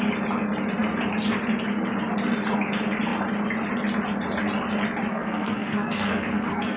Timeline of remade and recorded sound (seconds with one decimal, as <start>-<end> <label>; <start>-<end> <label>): 0.0-5.1 recorded; 5.1-6.8 remade